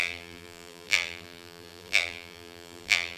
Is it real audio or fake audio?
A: fake